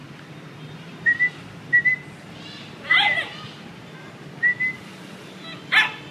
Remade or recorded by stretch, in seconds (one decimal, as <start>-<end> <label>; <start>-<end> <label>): 0.0-6.1 recorded